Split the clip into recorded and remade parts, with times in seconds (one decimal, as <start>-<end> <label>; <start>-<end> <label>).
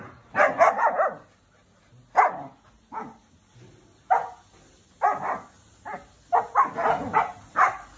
0.0-8.0 recorded